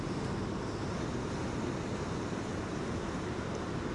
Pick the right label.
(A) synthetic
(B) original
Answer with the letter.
B